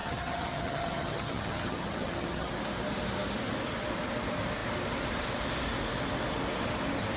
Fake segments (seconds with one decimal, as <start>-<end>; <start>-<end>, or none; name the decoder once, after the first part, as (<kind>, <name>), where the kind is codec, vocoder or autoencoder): 0.0-2.5 (vocoder, HiFi-GAN)